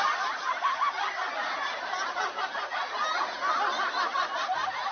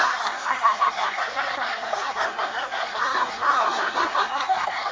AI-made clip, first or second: second